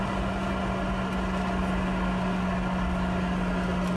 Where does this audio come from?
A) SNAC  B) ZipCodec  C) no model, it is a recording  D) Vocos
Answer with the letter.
C